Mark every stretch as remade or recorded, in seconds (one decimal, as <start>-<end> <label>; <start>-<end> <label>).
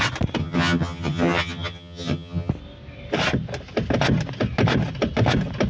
0.0-0.4 recorded; 0.4-2.5 remade; 2.5-5.7 recorded